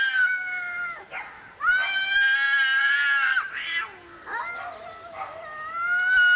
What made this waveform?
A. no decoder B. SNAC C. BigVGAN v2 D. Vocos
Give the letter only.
A